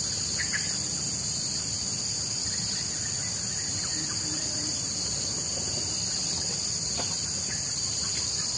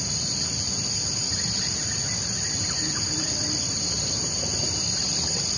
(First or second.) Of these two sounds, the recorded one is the first